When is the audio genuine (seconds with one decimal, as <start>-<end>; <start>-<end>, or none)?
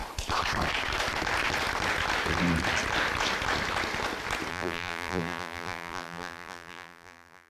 0.0-4.5